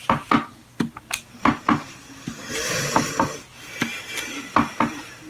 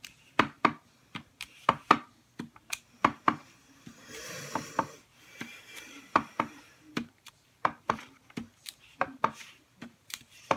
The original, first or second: first